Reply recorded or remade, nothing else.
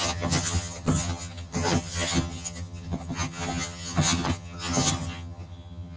remade